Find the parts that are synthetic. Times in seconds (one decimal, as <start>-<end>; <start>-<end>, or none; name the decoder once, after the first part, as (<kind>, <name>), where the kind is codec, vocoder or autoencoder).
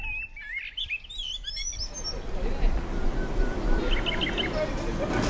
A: none